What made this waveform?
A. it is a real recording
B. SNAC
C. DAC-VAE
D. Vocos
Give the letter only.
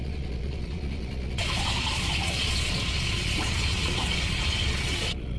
D